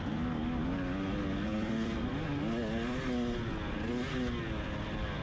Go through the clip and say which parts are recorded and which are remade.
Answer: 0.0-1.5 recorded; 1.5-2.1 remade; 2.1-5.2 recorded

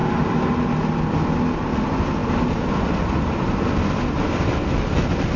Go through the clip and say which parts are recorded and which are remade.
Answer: 0.0-0.6 remade; 0.6-2.2 recorded; 2.2-5.4 remade